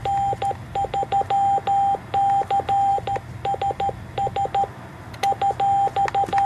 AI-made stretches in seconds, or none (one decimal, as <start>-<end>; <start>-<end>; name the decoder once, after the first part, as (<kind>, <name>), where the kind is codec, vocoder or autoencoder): none